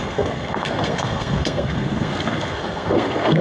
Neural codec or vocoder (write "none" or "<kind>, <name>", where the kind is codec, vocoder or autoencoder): codec, SNAC